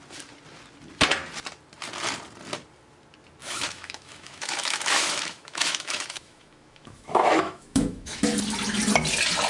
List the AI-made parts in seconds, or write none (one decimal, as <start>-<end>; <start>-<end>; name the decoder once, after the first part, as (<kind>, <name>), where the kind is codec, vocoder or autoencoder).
3.4-8.3 (autoencoder, DAC-VAE)